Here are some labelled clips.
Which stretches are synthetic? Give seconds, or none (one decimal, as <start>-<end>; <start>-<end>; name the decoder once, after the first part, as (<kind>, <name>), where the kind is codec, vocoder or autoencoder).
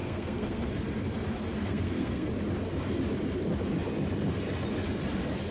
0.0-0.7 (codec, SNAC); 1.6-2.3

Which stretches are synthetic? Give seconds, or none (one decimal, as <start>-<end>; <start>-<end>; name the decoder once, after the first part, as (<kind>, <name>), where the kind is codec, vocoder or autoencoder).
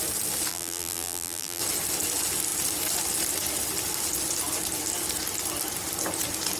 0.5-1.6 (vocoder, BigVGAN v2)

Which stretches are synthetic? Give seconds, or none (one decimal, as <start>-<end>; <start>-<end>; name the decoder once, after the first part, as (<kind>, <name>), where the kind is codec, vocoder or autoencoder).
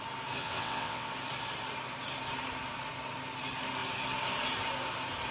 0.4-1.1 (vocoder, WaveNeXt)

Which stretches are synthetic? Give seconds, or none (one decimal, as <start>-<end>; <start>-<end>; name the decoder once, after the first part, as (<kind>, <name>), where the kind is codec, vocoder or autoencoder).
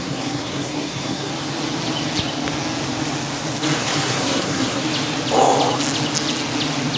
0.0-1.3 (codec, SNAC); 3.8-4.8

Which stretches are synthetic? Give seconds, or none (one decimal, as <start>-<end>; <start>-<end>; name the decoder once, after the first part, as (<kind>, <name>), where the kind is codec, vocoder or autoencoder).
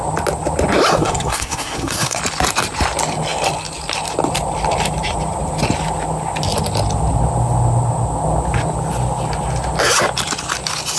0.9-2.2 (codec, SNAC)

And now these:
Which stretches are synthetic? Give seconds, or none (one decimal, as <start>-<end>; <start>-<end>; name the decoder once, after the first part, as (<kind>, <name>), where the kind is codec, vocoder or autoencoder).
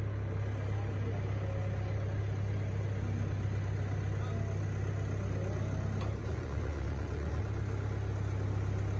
6.3-7.4 (vocoder, Vocos)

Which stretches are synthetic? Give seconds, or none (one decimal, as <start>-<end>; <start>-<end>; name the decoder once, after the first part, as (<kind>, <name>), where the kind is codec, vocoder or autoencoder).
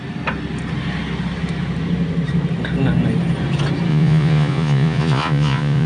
3.9-5.9 (vocoder, Vocos)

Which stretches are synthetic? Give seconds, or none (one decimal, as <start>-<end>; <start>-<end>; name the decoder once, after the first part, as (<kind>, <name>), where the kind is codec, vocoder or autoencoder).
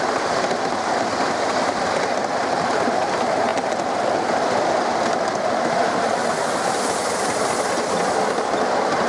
none